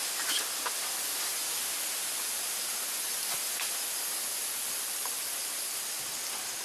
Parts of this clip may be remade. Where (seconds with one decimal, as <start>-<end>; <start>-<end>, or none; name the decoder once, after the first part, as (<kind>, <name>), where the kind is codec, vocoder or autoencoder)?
none